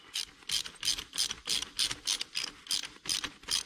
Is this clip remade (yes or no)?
no